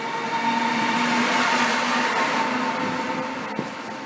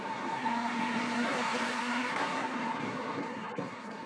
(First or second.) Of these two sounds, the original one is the first